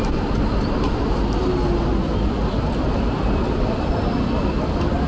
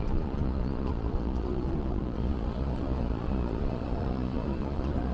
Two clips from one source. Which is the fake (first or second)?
second